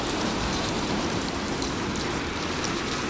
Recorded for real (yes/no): no